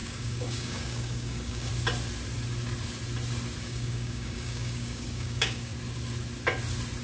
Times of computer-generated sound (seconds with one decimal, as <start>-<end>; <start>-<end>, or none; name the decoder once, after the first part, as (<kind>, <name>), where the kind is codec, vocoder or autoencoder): 0.0-1.7 (codec, DAC); 3.6-5.7